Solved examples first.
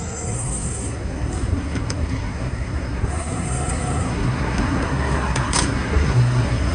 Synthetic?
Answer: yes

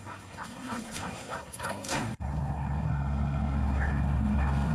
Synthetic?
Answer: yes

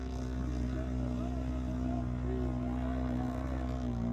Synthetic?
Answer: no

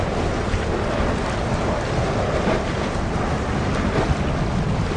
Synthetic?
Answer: no